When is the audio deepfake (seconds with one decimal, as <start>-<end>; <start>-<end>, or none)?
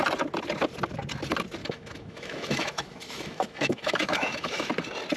1.6-4.7